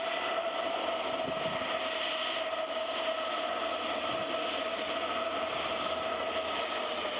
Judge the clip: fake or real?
real